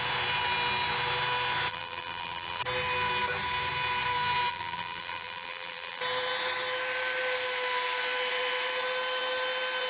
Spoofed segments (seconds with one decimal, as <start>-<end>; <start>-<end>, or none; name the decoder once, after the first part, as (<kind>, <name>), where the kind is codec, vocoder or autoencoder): 1.7-2.6 (vocoder, BigVGAN v2); 4.5-6.0